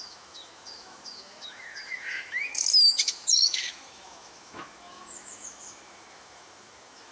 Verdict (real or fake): fake